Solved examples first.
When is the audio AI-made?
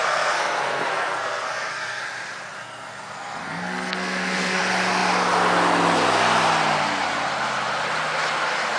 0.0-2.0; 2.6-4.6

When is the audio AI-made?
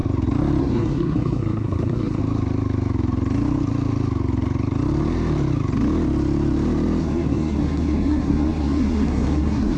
0.6-2.2; 7.0-9.8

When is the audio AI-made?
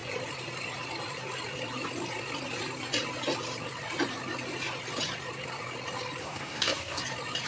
6.2-7.0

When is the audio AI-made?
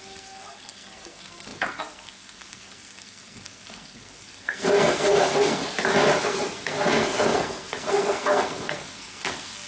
0.0-5.6; 6.2-9.7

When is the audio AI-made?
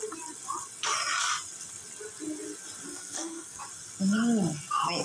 2.9-3.6